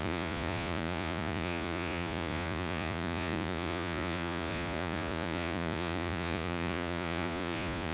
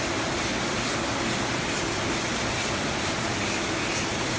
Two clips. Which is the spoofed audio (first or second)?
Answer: first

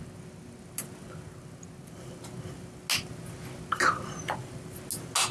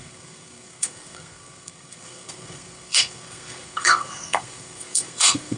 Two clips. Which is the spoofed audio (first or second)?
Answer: second